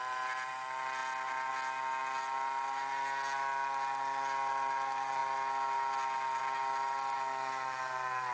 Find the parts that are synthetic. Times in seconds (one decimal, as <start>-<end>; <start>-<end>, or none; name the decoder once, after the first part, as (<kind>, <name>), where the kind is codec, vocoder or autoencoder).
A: none